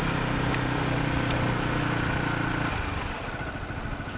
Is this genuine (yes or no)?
yes